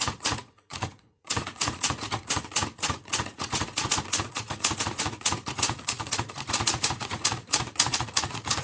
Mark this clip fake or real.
fake